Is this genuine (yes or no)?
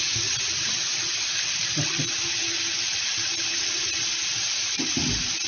yes